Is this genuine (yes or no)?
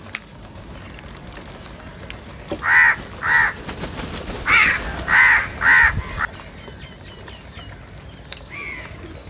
yes